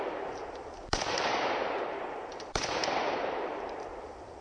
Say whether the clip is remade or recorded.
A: remade